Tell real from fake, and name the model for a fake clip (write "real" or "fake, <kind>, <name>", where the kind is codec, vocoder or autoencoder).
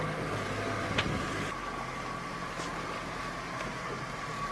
real